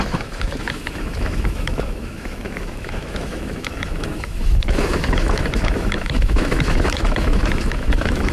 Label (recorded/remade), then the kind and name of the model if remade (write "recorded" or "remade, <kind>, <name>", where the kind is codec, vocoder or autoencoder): remade, autoencoder, DAC-VAE